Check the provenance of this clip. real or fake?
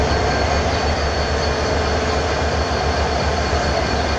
real